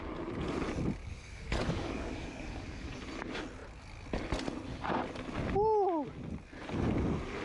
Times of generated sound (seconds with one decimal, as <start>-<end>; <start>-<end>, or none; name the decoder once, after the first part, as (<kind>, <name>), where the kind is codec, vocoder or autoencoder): 1.0-3.0 (codec, DAC)